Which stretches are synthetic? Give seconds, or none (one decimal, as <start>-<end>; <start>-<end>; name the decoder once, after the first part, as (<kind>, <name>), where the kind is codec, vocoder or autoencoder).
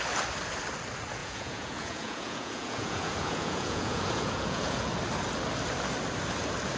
1.2-4.8 (vocoder, Vocos)